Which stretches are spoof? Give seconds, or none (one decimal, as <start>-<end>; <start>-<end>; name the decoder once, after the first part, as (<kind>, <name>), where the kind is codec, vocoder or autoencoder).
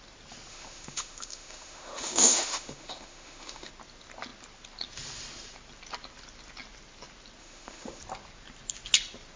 0.5-3.7 (autoencoder, DAC-VAE); 7.4-8.0